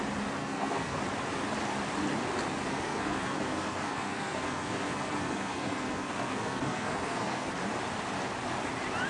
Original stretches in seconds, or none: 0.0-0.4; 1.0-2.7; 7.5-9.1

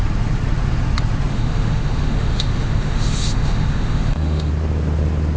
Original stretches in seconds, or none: 0.0-1.3; 4.5-5.4

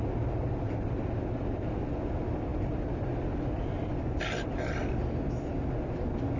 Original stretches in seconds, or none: 0.0-6.4